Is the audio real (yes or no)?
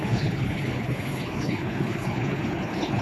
no